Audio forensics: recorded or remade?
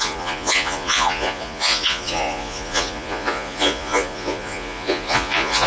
remade